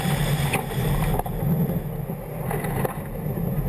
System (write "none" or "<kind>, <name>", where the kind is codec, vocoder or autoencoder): none